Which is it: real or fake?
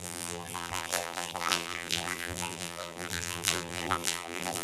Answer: fake